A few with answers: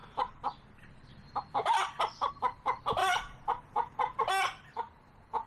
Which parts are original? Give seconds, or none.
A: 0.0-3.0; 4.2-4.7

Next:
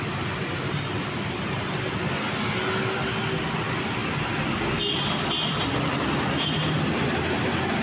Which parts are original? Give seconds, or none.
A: 0.0-7.8

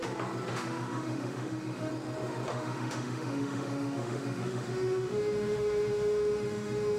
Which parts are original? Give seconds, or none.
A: 0.0-0.5; 1.9-2.5

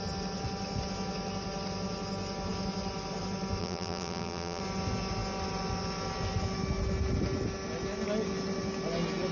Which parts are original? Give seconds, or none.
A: 0.0-3.6; 4.6-9.3

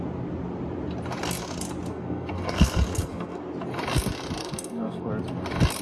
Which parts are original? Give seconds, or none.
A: 0.0-1.9; 3.4-4.4; 5.1-5.8

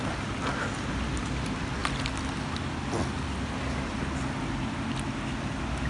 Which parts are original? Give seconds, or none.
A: 0.0-5.9

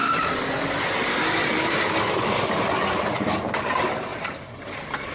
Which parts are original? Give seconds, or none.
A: 4.1-4.6

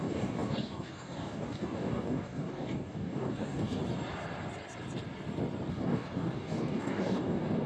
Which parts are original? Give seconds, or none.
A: 3.8-5.7